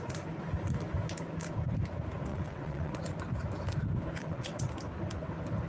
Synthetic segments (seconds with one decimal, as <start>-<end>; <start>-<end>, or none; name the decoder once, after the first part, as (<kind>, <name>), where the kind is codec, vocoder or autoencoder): 2.3-3.0 (vocoder, WaveNeXt); 4.2-4.7